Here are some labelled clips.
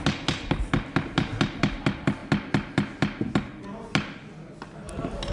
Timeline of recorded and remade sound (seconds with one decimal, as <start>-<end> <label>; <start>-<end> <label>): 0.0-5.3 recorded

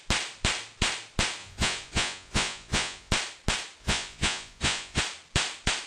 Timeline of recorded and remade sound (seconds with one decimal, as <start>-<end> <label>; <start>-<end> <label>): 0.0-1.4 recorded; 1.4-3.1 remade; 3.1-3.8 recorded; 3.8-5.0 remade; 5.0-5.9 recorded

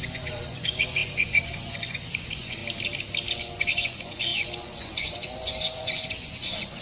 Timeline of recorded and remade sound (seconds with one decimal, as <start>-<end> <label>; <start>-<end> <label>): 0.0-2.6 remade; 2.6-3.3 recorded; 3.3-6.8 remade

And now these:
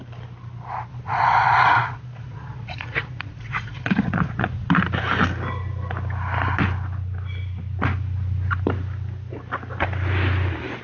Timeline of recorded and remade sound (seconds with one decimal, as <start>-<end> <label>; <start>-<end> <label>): 0.0-0.9 recorded; 0.9-4.7 remade; 4.7-10.8 recorded

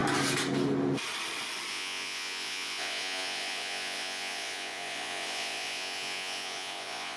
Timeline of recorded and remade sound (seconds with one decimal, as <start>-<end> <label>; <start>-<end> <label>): 0.0-1.7 recorded; 1.7-7.2 remade

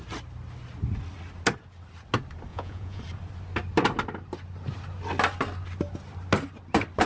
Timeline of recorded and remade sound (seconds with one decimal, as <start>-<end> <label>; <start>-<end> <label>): 0.0-2.5 recorded; 2.5-3.0 remade; 3.0-7.1 recorded

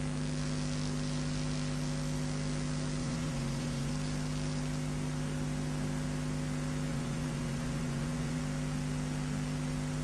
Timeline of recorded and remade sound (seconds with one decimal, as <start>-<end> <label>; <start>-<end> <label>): 0.0-3.0 recorded; 3.0-3.9 remade; 3.9-6.9 recorded; 6.9-8.4 remade; 8.4-10.0 recorded

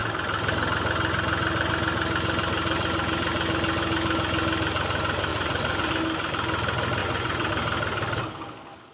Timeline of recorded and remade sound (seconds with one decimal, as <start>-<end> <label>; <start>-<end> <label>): 0.0-5.3 recorded; 5.3-5.9 remade; 5.9-7.0 recorded; 7.0-7.5 remade; 7.5-8.9 recorded